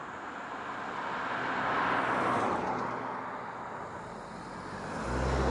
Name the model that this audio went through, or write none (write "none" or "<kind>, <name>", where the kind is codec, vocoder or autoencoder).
none